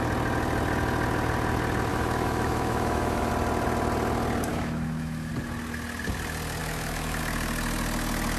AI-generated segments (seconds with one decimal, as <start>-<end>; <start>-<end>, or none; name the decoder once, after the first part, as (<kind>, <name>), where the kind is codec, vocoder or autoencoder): 1.9-3.3 (autoencoder, DAC-VAE); 4.5-5.3; 6.6-7.2